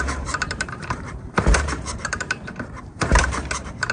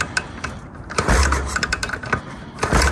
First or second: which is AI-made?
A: first